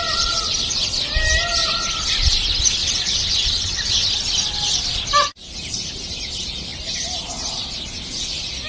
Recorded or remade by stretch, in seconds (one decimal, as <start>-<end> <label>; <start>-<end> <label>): 0.0-2.8 recorded; 2.8-4.1 remade; 4.1-8.7 recorded